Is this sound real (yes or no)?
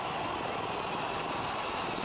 yes